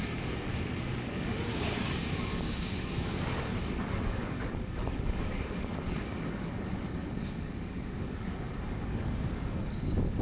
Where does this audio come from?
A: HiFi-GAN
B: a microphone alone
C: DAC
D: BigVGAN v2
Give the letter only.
C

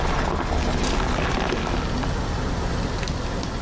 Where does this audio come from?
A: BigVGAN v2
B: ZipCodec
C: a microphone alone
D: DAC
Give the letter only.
C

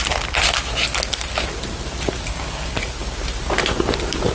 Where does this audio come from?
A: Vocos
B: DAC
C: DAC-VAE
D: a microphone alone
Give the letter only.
D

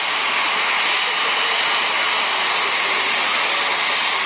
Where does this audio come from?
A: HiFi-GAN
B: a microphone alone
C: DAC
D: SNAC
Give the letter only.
B